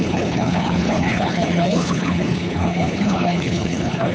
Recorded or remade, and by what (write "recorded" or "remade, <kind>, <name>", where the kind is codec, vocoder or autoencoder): remade, codec, HILCodec